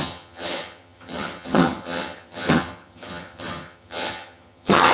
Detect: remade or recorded remade